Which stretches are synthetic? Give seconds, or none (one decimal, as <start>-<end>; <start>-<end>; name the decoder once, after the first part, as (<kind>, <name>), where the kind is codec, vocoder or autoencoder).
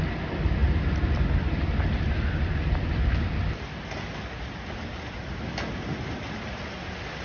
none